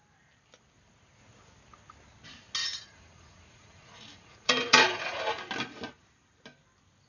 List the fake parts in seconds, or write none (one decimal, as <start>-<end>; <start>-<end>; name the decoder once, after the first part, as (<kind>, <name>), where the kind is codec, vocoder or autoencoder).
2.6-5.2 (vocoder, Vocos)